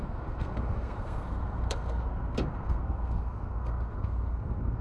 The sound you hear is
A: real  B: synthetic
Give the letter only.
B